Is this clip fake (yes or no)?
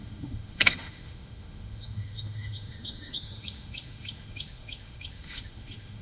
yes